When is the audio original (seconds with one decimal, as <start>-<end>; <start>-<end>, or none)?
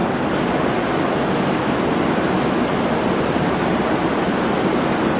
0.0-3.1; 4.0-5.2